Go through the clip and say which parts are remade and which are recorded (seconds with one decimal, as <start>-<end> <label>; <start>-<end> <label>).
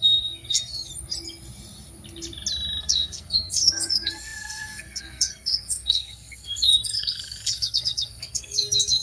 0.0-0.9 remade; 0.9-2.8 recorded; 2.8-9.0 remade